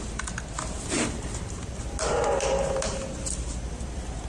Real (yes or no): yes